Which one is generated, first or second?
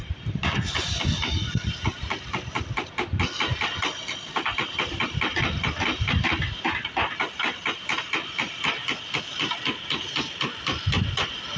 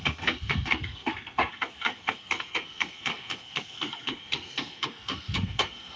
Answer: second